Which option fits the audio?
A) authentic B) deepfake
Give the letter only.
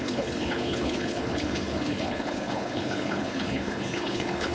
B